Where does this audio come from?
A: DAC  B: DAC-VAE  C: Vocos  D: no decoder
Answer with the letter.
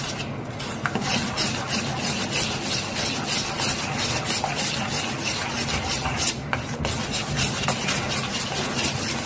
D